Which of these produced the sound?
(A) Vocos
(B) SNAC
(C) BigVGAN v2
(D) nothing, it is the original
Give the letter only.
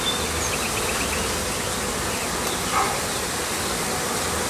D